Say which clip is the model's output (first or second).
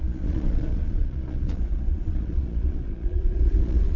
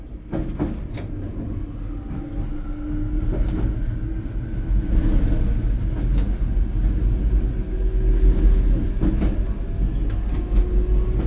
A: first